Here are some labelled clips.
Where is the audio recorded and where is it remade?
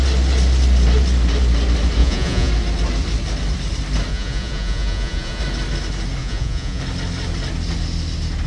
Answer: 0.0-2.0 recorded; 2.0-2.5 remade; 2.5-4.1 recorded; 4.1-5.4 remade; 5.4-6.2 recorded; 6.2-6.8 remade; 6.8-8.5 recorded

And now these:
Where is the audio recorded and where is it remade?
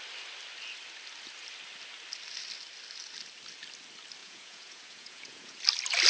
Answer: 0.0-4.2 recorded; 4.2-5.6 remade; 5.6-6.1 recorded